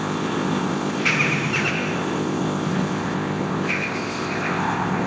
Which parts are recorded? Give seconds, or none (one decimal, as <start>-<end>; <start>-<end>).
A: 1.1-1.7